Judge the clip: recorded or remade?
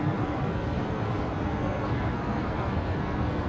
remade